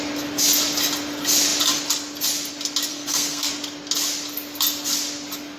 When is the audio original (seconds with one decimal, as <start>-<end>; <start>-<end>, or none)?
0.0-2.9; 3.5-5.6